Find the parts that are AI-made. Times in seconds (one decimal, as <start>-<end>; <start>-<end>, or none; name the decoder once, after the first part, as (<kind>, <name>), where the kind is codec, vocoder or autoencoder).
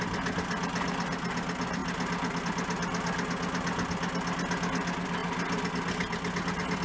none